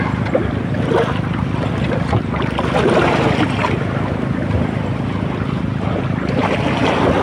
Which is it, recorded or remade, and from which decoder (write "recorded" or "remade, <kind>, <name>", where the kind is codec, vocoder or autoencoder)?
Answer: recorded